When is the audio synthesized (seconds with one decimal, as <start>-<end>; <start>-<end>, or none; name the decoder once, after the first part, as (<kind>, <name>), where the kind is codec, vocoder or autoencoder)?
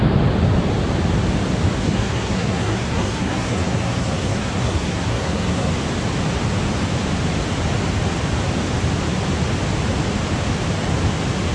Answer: 1.8-5.7 (codec, SNAC)